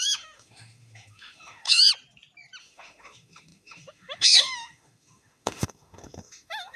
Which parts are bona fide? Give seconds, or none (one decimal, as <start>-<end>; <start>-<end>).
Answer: 1.9-2.6